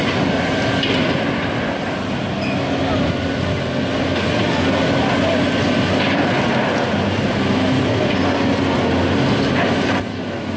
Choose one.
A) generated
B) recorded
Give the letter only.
B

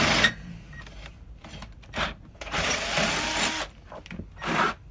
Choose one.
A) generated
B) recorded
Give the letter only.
B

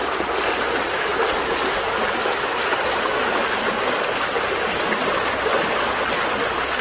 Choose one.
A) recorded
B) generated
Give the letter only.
A